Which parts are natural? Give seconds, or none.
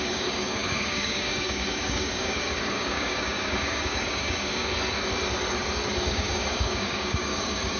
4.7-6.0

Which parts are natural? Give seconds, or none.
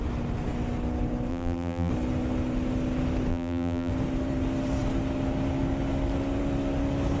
0.0-1.3; 1.9-3.3; 3.9-7.2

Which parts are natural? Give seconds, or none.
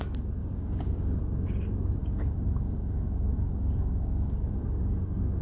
0.0-0.4; 1.2-2.0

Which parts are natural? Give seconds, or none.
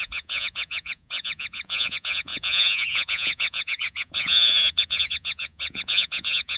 none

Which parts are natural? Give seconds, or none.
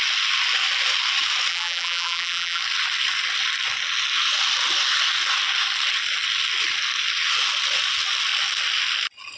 0.0-1.5; 2.6-9.4